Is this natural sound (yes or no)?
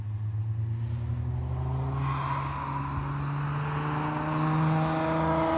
yes